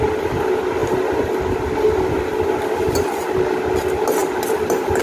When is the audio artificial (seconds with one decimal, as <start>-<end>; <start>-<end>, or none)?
4.2-5.0